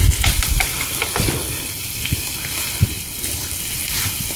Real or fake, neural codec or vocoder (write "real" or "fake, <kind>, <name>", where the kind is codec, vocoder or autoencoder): real